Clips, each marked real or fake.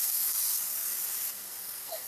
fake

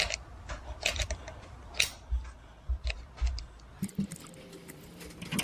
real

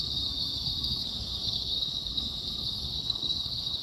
fake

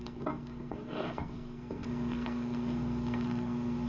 fake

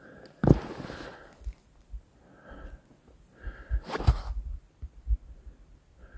real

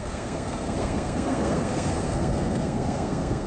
fake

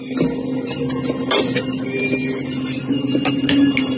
real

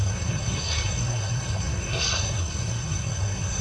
fake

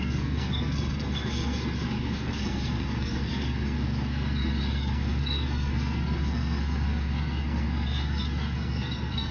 fake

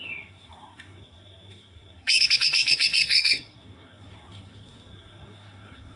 fake